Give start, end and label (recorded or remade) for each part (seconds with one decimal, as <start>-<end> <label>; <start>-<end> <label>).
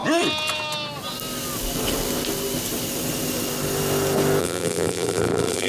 0.0-4.4 recorded; 4.4-5.7 remade